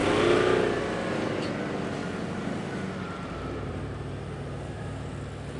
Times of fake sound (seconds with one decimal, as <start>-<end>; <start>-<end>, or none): 2.0-5.1